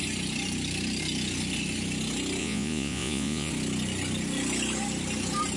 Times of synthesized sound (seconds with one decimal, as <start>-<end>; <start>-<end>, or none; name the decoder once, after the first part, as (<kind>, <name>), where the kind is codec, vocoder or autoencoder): 2.4-3.5 (vocoder, Vocos)